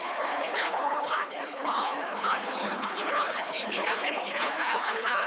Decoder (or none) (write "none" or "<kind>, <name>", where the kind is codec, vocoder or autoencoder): codec, HILCodec